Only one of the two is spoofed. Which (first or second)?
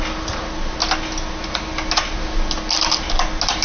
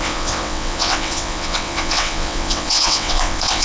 second